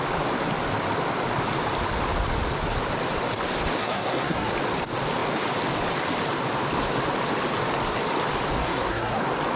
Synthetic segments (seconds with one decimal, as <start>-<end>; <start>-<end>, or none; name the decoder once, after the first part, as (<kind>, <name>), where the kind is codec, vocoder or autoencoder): 3.8-4.5 (codec, SNAC); 8.6-9.2

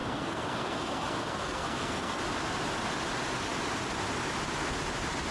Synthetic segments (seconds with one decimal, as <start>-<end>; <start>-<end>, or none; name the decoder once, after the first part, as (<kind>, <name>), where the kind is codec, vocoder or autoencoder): 0.0-2.2 (codec, SNAC)

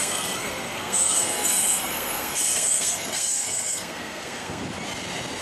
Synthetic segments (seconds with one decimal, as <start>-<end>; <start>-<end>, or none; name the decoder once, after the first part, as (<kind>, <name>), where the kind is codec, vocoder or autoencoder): 0.0-4.6 (codec, SNAC)

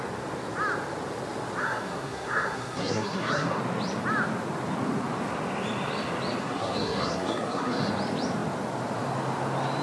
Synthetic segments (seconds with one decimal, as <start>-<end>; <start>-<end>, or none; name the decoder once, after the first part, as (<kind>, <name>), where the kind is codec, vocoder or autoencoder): 1.6-3.6 (codec, SNAC); 6.4-7.9

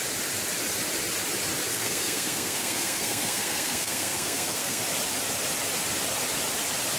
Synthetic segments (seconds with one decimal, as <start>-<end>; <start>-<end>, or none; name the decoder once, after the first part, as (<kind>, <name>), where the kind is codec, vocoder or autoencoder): 1.7-4.8 (codec, SNAC)